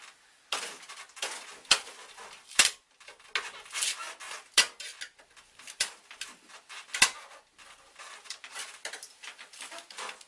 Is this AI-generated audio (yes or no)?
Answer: no